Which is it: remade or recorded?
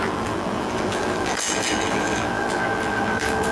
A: remade